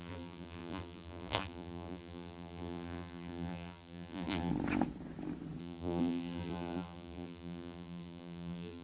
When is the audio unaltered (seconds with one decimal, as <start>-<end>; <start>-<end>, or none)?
4.5-5.6